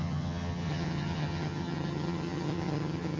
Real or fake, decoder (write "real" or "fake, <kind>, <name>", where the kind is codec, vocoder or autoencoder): fake, vocoder, HiFi-GAN